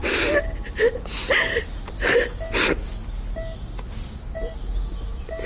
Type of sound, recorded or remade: recorded